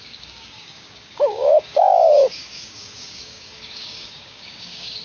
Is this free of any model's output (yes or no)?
no